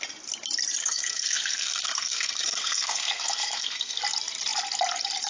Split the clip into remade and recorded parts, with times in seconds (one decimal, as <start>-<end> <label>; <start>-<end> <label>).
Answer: 0.0-0.8 recorded; 0.8-4.0 remade; 4.0-5.3 recorded